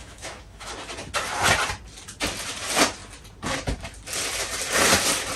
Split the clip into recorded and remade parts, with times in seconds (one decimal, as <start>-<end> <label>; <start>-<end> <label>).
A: 0.0-0.7 remade; 0.7-5.4 recorded